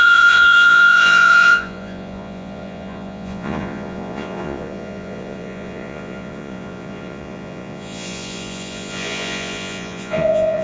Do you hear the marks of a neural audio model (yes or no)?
yes